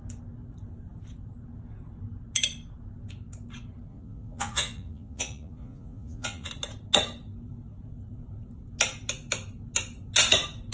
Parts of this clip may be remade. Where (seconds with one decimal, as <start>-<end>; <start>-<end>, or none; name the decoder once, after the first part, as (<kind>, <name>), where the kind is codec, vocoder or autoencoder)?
3.9-6.5 (vocoder, Vocos)